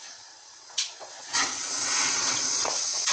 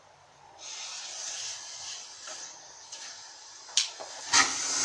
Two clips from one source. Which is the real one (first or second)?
second